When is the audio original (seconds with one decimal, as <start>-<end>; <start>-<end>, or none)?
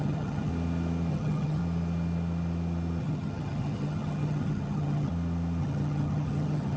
0.5-1.1; 1.6-3.0; 5.1-5.6